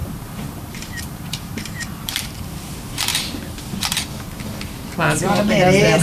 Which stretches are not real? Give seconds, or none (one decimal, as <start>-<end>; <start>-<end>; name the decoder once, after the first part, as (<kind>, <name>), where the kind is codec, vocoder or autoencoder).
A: 0.0-2.7 (vocoder, BigVGAN v2)

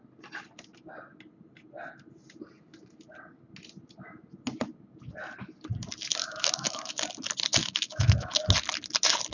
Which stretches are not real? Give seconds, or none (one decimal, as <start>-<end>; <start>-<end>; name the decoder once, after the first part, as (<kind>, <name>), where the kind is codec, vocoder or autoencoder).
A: 6.2-6.9 (autoencoder, DAC-VAE); 7.6-8.3